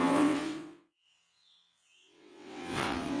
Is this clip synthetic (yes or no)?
yes